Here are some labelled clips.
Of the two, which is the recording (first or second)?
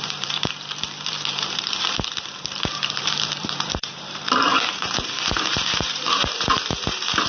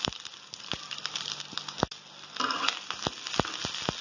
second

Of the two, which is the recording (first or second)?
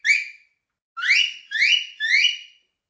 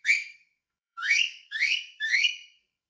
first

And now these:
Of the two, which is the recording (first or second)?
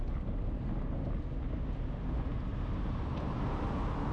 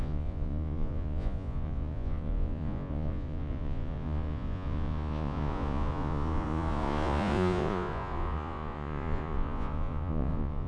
first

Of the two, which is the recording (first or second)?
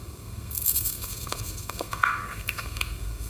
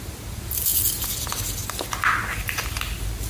second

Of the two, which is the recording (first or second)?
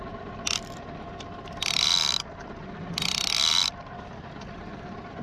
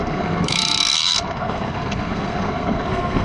first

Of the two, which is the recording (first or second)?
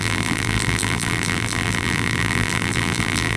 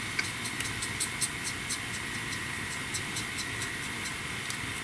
second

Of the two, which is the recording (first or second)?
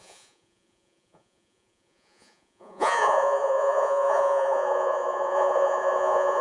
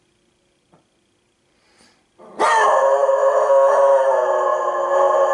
second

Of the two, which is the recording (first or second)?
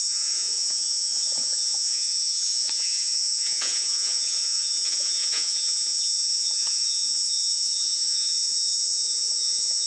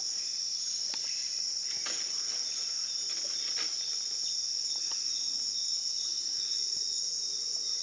second